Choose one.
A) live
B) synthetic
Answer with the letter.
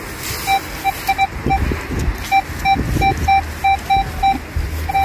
A